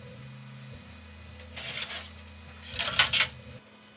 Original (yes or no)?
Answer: yes